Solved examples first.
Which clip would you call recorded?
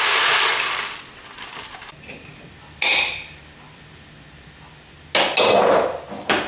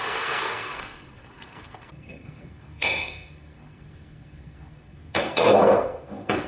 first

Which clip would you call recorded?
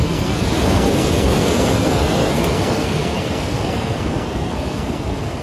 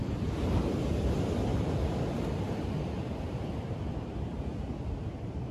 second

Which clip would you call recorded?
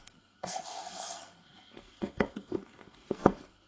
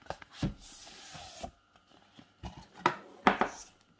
second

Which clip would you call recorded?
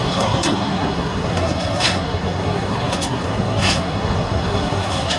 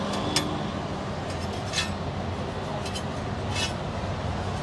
second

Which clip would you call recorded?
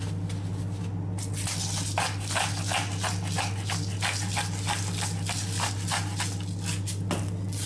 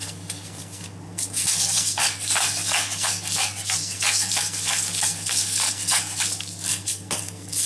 first